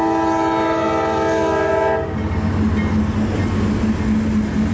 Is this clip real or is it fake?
real